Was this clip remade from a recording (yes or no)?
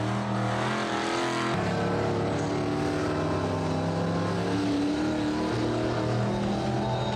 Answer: no